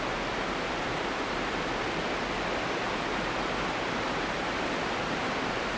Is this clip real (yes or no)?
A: yes